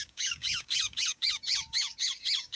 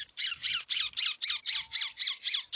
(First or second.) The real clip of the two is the second